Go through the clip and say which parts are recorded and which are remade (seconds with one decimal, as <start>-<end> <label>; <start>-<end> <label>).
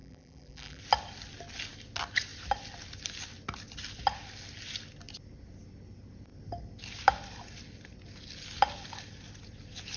0.0-0.8 remade; 0.8-10.0 recorded